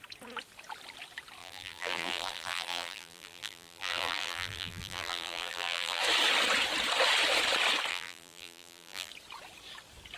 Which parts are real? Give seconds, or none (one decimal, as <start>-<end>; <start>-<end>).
0.0-1.4; 6.0-7.9; 9.1-10.2